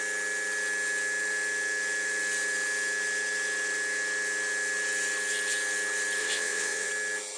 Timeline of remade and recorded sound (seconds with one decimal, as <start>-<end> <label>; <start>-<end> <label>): 0.0-6.2 recorded; 6.2-6.9 remade; 6.9-7.4 recorded